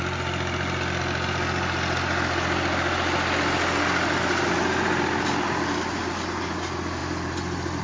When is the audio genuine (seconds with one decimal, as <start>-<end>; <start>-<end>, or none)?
0.0-7.8

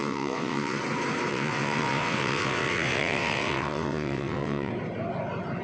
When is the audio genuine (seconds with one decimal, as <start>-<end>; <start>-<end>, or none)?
0.8-1.3; 4.7-5.6

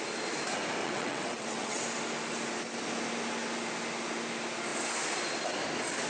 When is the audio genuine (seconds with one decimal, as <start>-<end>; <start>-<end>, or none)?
0.0-0.8; 1.8-6.1

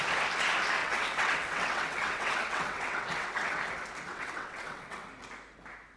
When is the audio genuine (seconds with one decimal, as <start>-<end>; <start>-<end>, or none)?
0.0-0.8; 3.6-4.1; 5.1-6.0